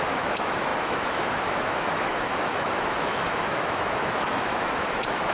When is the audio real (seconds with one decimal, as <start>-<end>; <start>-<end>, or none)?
none